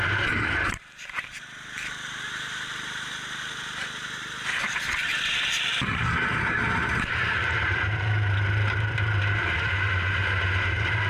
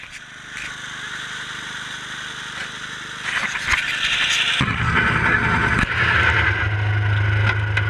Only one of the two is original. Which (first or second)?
second